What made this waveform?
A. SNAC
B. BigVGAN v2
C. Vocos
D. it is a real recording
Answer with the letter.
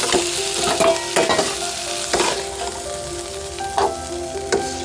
D